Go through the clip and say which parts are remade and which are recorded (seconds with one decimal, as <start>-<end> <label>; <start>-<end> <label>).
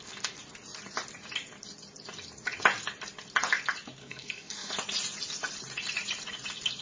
0.0-4.0 recorded; 4.0-4.7 remade; 4.7-6.8 recorded